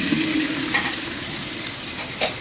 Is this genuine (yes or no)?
yes